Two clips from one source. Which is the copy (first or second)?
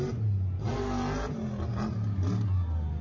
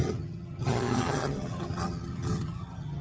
second